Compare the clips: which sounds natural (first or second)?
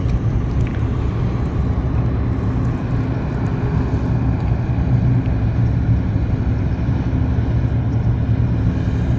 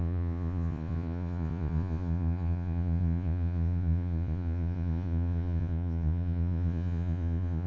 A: first